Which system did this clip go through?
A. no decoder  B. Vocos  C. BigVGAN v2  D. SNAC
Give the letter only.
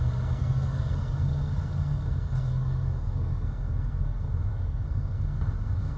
D